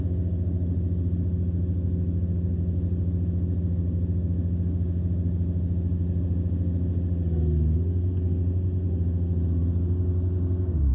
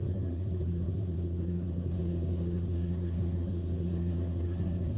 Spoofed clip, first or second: second